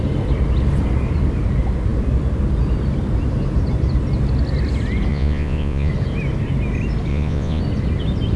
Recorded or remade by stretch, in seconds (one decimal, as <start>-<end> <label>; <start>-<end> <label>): 0.0-5.1 recorded; 5.1-5.9 remade; 5.9-7.1 recorded; 7.1-7.6 remade; 7.6-8.4 recorded